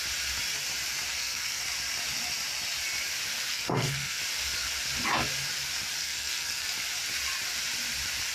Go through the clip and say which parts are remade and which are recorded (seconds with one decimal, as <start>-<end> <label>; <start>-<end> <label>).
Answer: 0.0-1.1 recorded; 1.1-1.6 remade; 1.6-3.5 recorded; 3.5-4.2 remade; 4.2-6.0 recorded; 6.0-6.6 remade; 6.6-8.3 recorded